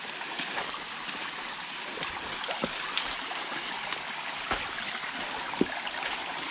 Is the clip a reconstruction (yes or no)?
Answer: no